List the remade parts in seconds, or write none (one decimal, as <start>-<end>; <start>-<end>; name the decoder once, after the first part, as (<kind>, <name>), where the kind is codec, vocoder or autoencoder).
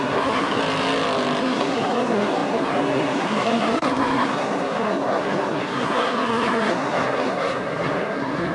0.0-0.6 (codec, SNAC); 1.4-8.5